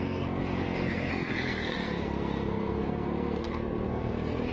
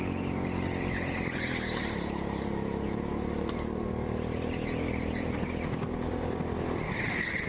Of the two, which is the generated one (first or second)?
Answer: first